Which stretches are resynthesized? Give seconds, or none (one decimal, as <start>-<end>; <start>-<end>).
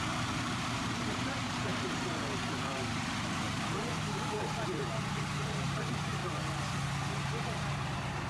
0.0-6.2; 7.4-8.3